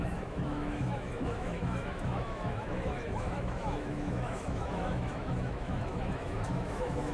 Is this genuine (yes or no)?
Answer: no